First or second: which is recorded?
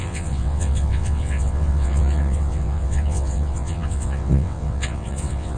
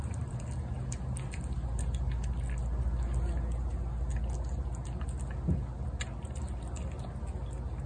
second